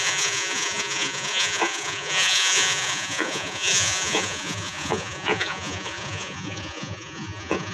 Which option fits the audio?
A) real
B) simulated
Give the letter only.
B